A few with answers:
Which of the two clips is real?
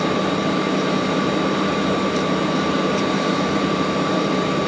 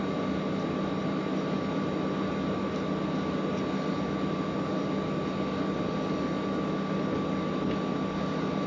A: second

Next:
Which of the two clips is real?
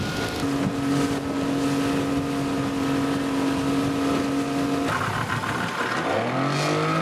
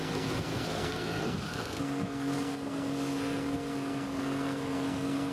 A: first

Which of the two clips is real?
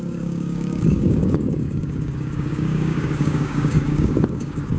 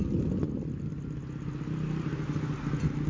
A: second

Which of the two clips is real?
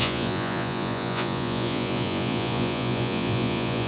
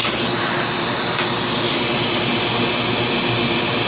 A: second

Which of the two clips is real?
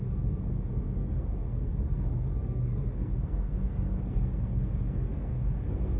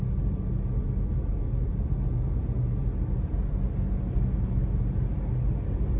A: second